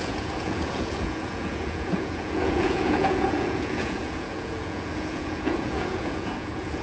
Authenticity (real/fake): fake